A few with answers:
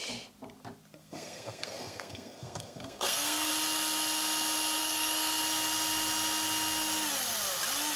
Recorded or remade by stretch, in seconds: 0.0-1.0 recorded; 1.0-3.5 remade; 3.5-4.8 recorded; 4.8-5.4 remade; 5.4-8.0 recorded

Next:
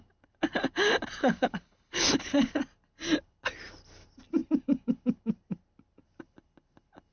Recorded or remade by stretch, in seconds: 0.0-1.2 recorded; 1.2-2.6 remade; 2.6-7.1 recorded

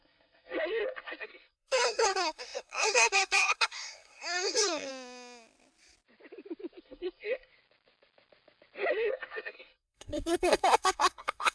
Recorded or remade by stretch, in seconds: 0.0-4.9 remade; 4.9-6.8 recorded; 6.8-7.5 remade; 7.5-8.9 recorded; 8.9-11.5 remade

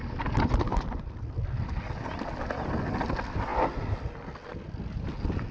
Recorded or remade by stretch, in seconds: 0.0-0.7 recorded; 0.7-1.3 remade; 1.3-5.5 recorded

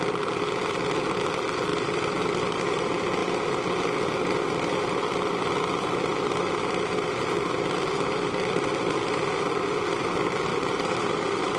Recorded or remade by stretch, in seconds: 0.0-11.6 recorded

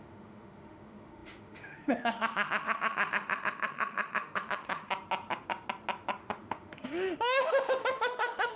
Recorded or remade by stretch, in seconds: 0.0-4.9 remade; 4.9-6.2 recorded; 6.2-8.6 remade

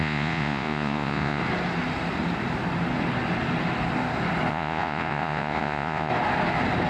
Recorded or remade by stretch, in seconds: 0.0-1.4 remade; 1.4-4.5 recorded; 4.5-6.1 remade; 6.1-6.9 recorded